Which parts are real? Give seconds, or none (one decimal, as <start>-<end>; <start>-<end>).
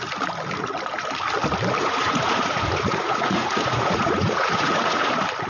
0.0-1.8; 5.1-5.5